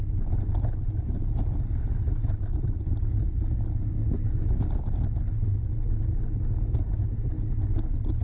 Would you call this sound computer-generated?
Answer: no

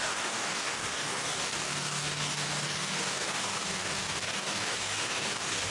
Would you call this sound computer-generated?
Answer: yes